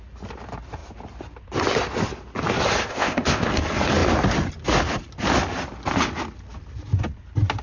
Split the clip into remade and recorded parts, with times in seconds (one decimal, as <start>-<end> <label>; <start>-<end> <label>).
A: 0.0-2.9 recorded; 2.9-3.5 remade; 3.5-7.6 recorded